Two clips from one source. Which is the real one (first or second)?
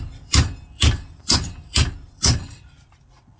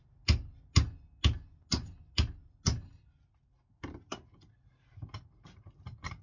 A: second